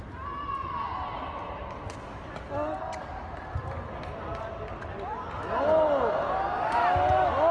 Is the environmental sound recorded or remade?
recorded